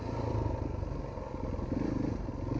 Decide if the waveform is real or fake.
real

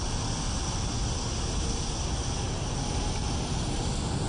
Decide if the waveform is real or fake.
real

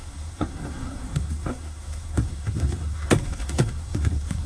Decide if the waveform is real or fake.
fake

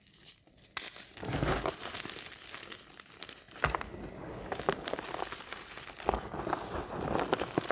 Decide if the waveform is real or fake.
real